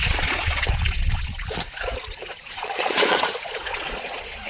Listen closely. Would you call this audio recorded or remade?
remade